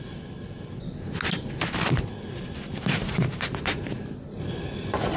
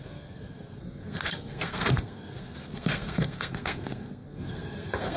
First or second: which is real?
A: first